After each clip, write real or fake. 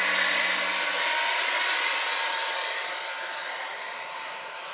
real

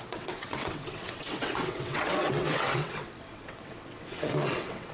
fake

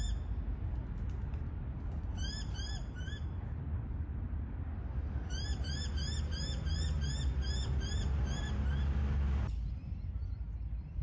real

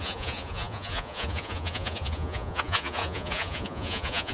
fake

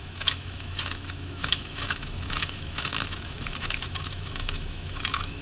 fake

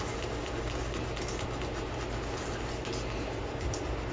real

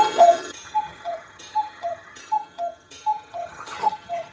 fake